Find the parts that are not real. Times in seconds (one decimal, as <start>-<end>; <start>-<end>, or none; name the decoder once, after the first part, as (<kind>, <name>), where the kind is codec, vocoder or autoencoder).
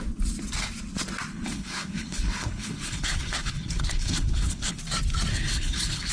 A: 1.3-4.8 (codec, HILCodec); 5.3-6.1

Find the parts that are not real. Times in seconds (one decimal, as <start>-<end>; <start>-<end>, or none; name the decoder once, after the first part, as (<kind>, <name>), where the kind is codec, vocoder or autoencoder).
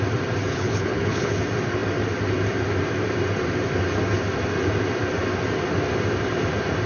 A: 0.5-1.4 (codec, HILCodec)